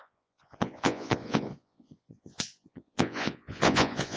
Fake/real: fake